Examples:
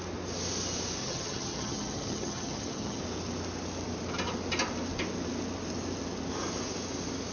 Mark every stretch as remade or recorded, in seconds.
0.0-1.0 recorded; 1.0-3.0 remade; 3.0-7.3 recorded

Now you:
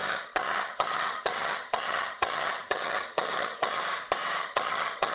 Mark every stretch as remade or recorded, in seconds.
0.0-3.8 remade; 3.8-4.4 recorded; 4.4-5.1 remade